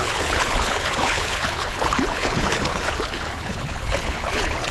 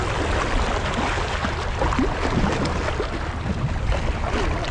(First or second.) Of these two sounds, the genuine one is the second